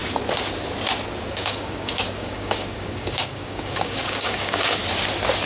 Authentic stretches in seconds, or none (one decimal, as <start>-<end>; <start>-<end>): 0.0-1.3; 4.8-5.5